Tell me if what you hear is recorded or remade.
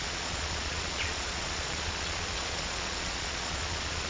remade